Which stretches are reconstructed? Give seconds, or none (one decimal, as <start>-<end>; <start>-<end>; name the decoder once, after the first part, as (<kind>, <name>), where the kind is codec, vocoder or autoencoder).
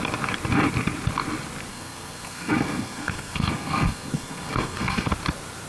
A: 1.7-5.1 (codec, SNAC)